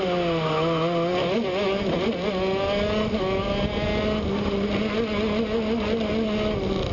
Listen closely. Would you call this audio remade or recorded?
recorded